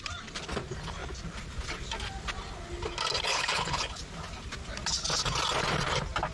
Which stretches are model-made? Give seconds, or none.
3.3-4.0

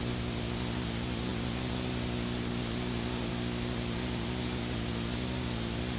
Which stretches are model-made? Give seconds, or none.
none